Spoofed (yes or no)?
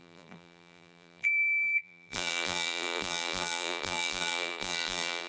yes